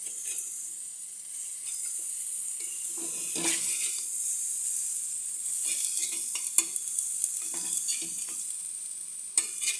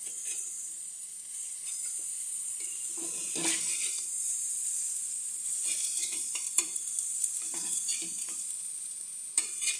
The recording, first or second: first